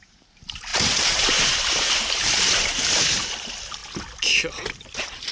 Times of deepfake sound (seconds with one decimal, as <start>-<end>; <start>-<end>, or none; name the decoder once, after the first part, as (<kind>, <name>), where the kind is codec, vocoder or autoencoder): 0.0-3.8 (vocoder, BigVGAN v2)